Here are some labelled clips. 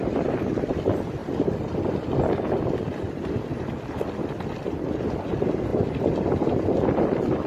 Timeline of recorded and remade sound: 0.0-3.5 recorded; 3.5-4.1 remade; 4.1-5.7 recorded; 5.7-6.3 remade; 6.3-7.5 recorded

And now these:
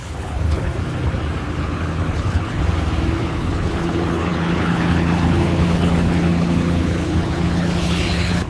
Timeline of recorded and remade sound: 0.0-0.7 remade; 0.7-1.5 recorded; 1.5-2.6 remade; 2.6-3.2 recorded; 3.2-8.5 remade

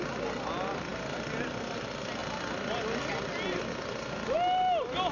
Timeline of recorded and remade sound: 0.0-5.1 recorded

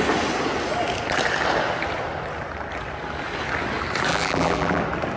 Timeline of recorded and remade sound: 0.0-4.1 recorded; 4.1-4.8 remade; 4.8-5.2 recorded